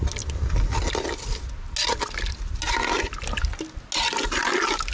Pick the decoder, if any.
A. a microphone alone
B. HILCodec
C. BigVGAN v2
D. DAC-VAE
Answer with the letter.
A